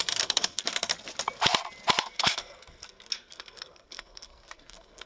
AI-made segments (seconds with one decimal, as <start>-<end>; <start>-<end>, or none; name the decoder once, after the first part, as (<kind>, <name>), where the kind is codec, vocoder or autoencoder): 0.0-0.9 (codec, SNAC); 2.0-5.1